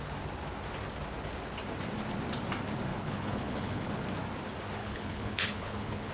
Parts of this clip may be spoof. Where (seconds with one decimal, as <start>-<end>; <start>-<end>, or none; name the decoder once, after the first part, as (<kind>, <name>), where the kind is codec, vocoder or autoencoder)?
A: 2.9-3.9 (codec, HILCodec); 4.8-6.1